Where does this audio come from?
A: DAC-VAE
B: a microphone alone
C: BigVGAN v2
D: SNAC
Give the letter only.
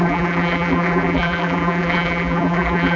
C